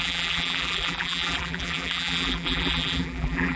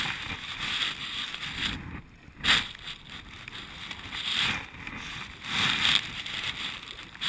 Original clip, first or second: second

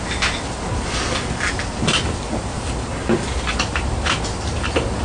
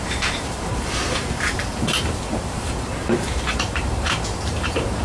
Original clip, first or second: first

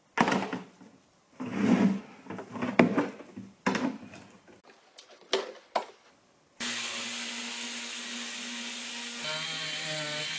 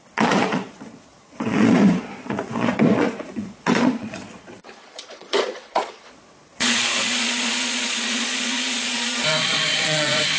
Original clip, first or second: first